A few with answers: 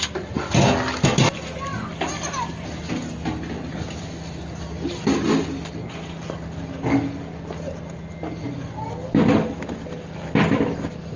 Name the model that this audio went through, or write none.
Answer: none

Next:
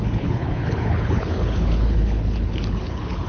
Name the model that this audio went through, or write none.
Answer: codec, HILCodec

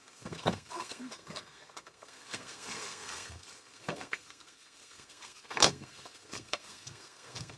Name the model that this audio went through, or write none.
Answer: codec, SNAC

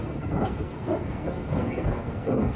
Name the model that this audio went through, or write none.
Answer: codec, SNAC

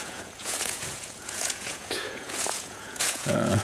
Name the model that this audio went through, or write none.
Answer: vocoder, Vocos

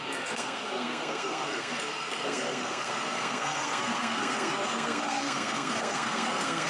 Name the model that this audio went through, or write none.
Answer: codec, SNAC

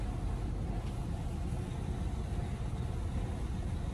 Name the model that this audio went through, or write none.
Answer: none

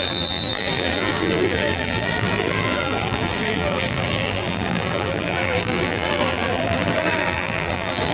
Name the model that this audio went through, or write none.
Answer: vocoder, BigVGAN v2